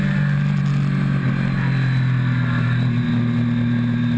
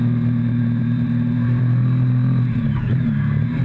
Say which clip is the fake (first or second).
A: second